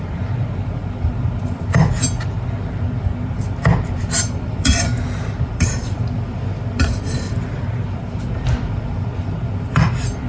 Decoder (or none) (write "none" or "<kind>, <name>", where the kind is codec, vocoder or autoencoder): vocoder, BigVGAN v2